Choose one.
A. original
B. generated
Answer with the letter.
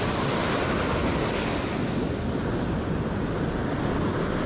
A